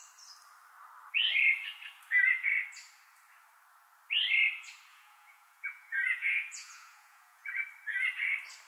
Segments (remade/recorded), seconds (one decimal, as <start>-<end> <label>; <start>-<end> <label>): 0.0-4.9 recorded; 4.9-7.5 remade; 7.5-8.7 recorded